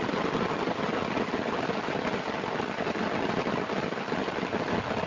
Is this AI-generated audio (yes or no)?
no